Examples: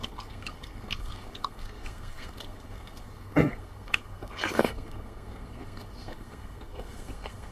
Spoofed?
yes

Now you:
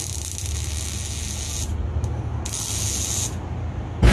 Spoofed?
no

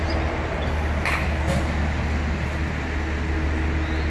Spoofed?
no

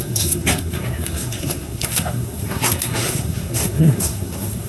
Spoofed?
yes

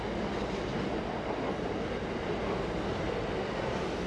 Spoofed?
no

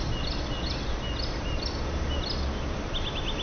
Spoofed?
no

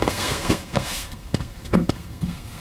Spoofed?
yes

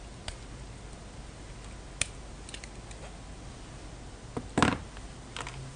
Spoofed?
no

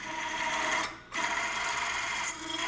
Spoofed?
no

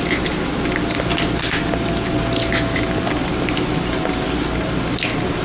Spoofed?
no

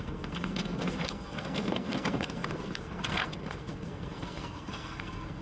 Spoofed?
yes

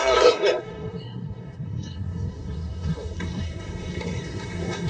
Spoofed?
yes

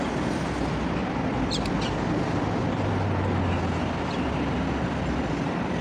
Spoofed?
no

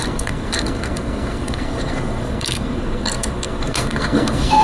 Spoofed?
yes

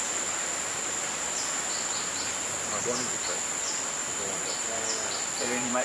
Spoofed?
no